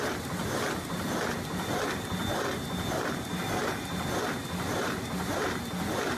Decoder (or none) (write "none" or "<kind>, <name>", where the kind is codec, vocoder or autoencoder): none